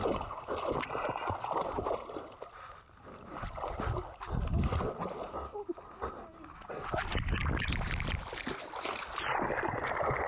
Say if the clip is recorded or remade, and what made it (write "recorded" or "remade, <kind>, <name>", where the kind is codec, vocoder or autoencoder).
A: recorded